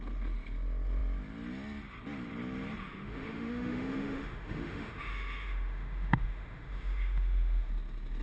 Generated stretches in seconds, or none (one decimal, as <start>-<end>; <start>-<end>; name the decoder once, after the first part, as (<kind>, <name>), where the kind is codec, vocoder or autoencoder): 2.8-7.7 (autoencoder, DAC-VAE)